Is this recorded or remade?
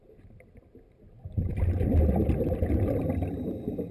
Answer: recorded